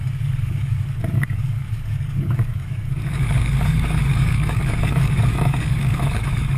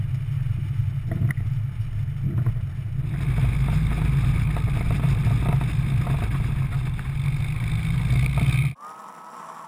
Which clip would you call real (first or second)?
second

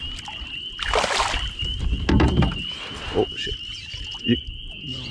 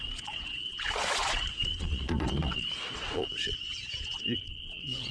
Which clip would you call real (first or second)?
first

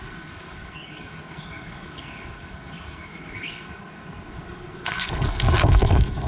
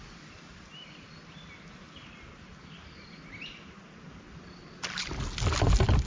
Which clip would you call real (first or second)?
second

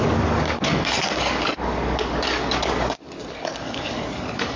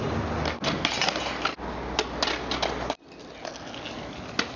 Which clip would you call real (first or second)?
second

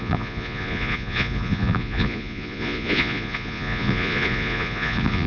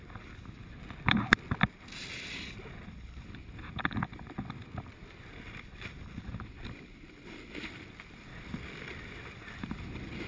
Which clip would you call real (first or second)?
second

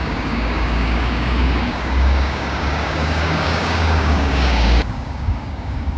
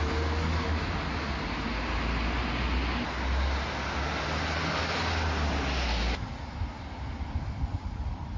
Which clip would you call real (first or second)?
second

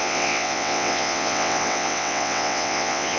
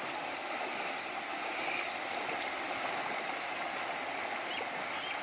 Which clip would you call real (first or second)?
second